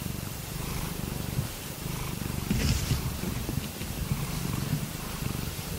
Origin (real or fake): fake